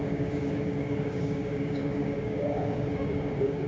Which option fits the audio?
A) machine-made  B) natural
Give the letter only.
A